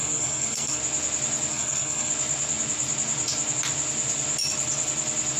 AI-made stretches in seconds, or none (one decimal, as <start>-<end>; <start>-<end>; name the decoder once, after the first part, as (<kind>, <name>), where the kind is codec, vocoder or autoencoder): 0.0-0.8 (codec, SNAC); 1.5-2.1